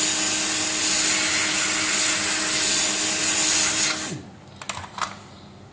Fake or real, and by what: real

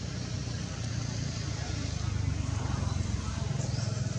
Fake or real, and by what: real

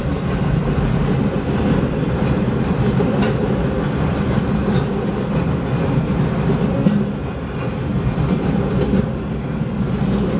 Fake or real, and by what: real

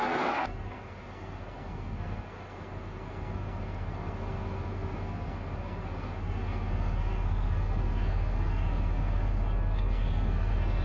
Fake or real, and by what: fake, codec, SNAC